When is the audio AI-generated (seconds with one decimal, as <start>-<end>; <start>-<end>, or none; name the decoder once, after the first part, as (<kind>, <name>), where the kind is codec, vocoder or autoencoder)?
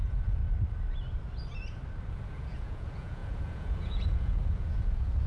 0.0-0.4 (vocoder, Vocos); 2.1-5.3